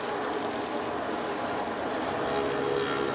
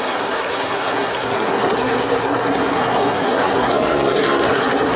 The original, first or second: first